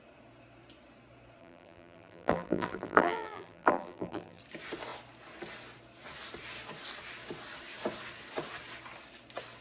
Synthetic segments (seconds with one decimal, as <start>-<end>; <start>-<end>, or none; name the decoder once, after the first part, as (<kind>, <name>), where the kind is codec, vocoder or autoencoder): 1.4-4.4 (vocoder, BigVGAN v2)